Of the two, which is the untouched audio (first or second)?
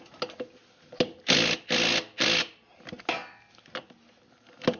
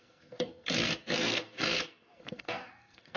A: first